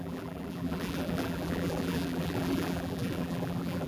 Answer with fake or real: fake